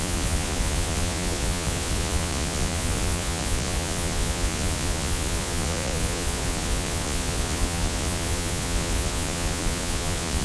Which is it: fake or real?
fake